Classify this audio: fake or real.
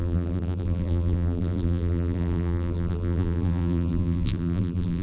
fake